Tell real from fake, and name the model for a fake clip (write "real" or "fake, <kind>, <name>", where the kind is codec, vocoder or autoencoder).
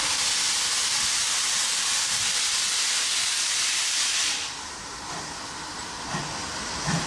fake, vocoder, BigVGAN v2